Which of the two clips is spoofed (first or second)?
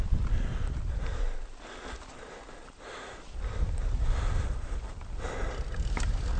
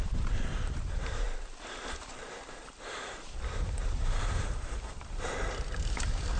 second